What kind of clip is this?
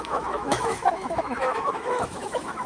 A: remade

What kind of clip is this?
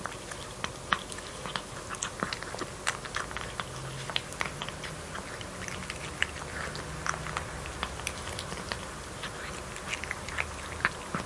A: recorded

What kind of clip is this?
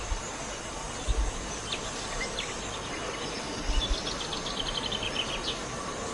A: recorded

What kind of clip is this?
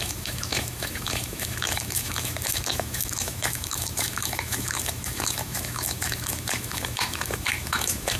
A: remade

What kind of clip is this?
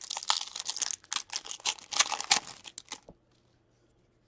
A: recorded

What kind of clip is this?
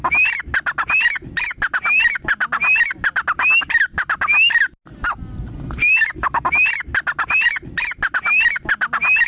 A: recorded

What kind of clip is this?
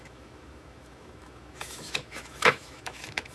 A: remade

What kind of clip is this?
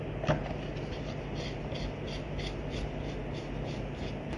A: recorded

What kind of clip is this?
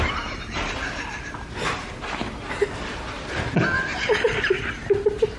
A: recorded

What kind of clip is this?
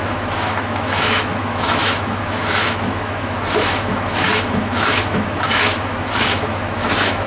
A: remade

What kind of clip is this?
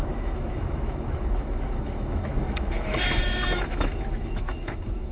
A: remade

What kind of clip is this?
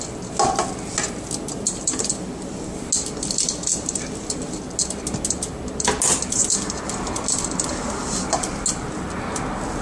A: recorded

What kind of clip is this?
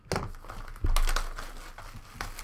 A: recorded